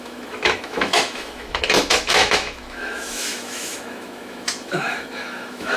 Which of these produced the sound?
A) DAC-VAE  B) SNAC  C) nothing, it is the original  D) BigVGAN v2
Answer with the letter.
A